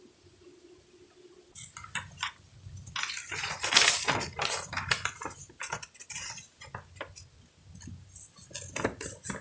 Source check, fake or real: real